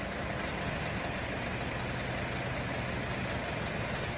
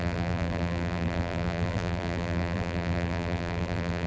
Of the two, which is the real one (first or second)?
first